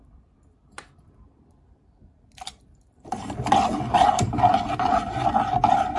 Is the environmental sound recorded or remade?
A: remade